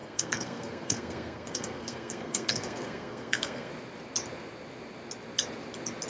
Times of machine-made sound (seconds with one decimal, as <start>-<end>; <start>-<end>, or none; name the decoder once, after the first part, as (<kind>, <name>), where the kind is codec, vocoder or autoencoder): 0.0-3.7 (codec, SNAC)